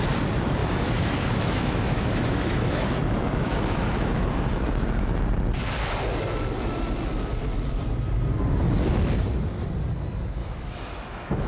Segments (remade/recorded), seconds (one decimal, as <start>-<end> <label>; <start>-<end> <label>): 0.0-0.6 recorded; 0.6-4.6 remade; 4.6-10.4 recorded; 10.4-11.5 remade